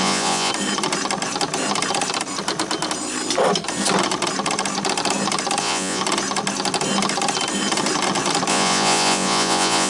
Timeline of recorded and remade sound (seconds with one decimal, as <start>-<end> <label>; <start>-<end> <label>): 0.0-0.5 remade; 0.5-5.6 recorded; 5.6-6.0 remade; 6.0-8.5 recorded; 8.5-9.9 remade